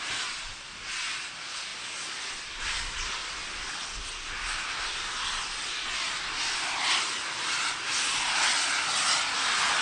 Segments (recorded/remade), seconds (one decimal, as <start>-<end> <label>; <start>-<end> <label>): 0.0-9.8 recorded

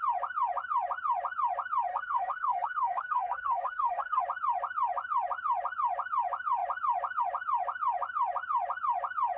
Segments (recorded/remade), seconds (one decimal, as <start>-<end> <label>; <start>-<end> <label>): 0.0-1.9 recorded; 1.9-4.2 remade; 4.2-9.4 recorded

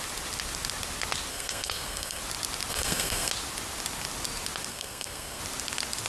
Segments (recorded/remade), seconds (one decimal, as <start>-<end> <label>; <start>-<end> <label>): 0.0-1.3 recorded; 1.3-2.2 remade; 2.2-2.7 recorded; 2.7-3.3 remade; 3.3-4.7 recorded; 4.7-5.4 remade; 5.4-6.1 recorded

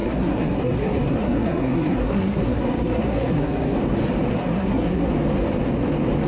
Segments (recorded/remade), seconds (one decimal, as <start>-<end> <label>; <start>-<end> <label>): 0.0-3.8 remade; 3.8-4.3 recorded; 4.3-5.1 remade; 5.1-6.3 recorded

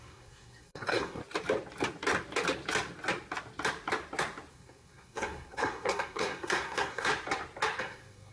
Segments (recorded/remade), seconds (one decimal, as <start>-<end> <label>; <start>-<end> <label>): 0.0-1.2 remade; 1.2-4.5 recorded; 4.5-7.1 remade; 7.1-7.8 recorded; 7.8-8.3 remade

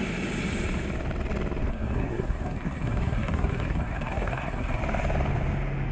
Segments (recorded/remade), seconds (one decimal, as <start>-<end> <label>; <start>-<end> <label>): 0.0-1.7 recorded; 1.7-4.8 remade; 4.8-5.9 recorded

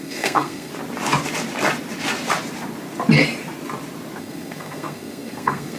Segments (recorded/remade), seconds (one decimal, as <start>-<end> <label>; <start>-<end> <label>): 0.0-0.7 remade; 0.7-4.2 recorded; 4.2-5.8 remade